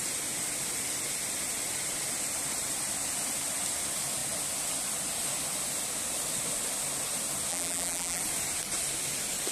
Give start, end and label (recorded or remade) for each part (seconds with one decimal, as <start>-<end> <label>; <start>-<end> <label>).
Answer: 0.0-7.5 recorded; 7.5-8.2 remade; 8.2-9.5 recorded